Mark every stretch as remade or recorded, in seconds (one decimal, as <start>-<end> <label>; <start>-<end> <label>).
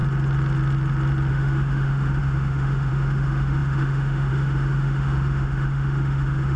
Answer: 0.0-1.3 recorded; 1.3-6.6 remade